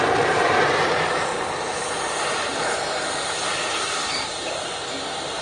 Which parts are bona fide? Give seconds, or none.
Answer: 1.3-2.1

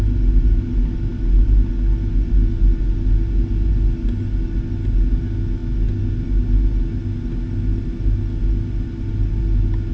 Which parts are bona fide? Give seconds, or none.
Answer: 0.0-9.9

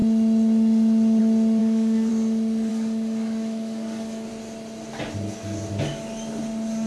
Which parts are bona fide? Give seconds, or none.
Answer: 0.0-1.6; 2.1-2.7; 4.3-6.9